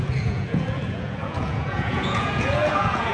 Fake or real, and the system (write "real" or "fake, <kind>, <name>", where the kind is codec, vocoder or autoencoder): fake, vocoder, Vocos